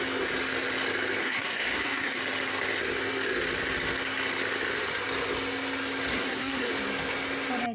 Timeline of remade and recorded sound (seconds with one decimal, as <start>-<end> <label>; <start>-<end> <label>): 0.0-1.2 recorded; 1.2-2.2 remade; 2.2-6.1 recorded; 6.1-6.7 remade; 6.7-7.7 recorded